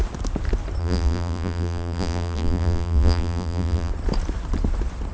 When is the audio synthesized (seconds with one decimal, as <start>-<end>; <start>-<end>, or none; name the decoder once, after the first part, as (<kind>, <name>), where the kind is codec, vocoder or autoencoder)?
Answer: 0.8-3.9 (vocoder, BigVGAN v2)